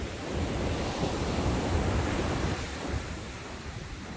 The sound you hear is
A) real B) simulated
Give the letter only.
B